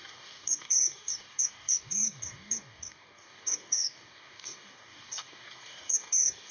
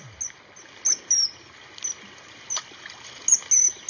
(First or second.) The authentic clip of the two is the second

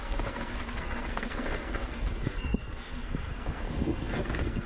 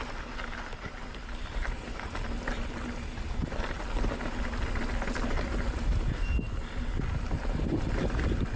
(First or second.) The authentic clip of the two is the second